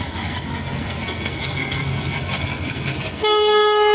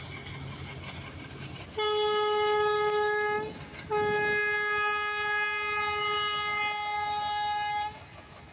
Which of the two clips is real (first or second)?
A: second